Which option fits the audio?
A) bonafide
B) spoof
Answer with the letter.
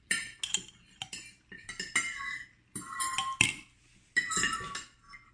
A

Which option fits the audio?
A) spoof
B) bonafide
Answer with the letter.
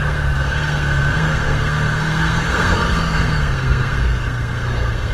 A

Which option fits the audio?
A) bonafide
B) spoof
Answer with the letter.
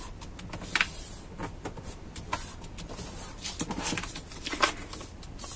A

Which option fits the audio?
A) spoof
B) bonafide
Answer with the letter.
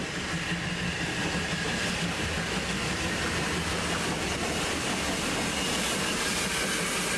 B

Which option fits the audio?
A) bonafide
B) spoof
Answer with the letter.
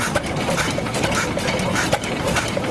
A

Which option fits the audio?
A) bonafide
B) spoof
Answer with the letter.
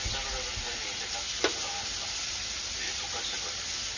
A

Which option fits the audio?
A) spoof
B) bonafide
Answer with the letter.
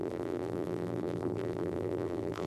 A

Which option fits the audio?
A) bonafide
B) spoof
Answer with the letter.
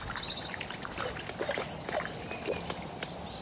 A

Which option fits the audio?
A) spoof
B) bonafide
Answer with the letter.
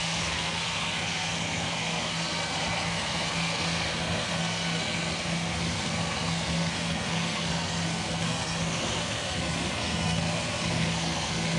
A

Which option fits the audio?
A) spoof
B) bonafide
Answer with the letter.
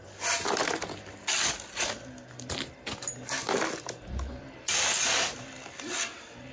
B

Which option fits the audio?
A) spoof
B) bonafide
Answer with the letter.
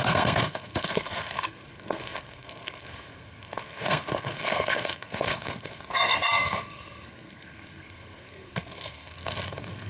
A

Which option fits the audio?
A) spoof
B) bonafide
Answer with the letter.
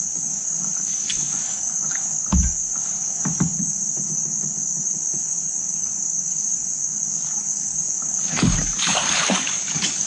A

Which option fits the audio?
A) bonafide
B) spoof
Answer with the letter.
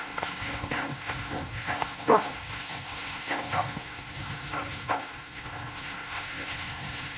B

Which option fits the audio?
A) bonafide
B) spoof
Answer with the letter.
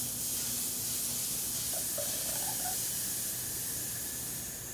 A